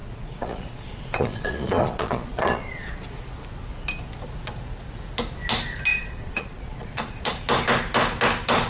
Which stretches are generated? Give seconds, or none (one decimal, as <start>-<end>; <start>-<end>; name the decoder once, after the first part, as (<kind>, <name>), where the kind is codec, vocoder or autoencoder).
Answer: 0.0-3.2 (vocoder, Vocos); 5.9-7.4